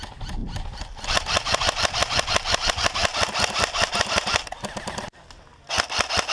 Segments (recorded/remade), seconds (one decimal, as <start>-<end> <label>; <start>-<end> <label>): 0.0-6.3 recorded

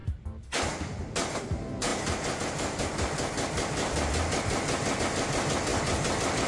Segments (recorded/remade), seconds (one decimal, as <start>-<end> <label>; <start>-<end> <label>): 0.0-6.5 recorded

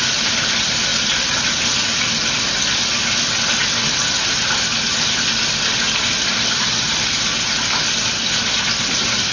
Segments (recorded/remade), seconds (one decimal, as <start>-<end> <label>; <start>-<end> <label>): 0.0-9.3 recorded

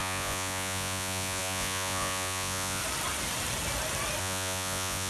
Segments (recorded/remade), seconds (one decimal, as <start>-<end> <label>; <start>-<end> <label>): 0.0-2.8 remade; 2.8-4.2 recorded; 4.2-5.1 remade

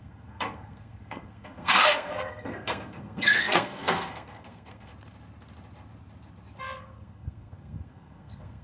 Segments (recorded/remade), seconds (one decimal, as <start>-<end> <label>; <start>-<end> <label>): 0.0-4.9 remade; 4.9-6.6 recorded; 6.6-8.6 remade